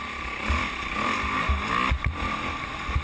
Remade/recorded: recorded